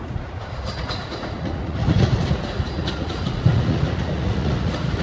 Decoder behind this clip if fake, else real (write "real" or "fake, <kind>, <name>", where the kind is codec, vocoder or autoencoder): fake, vocoder, Vocos